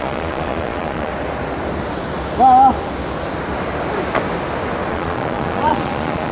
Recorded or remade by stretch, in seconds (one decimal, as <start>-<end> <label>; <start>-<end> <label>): 0.0-1.1 remade; 1.1-4.9 recorded; 4.9-6.3 remade